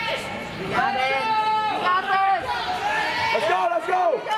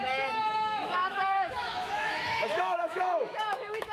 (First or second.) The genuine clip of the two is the first